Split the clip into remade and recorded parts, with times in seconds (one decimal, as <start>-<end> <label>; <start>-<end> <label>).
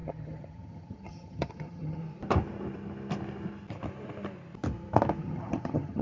0.0-2.0 remade; 2.0-5.2 recorded; 5.2-6.0 remade